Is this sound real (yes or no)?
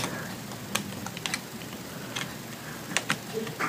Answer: yes